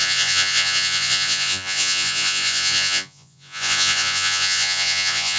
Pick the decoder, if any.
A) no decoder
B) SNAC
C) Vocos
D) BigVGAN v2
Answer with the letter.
C